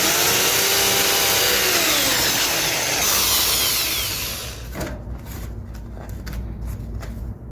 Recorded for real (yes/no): yes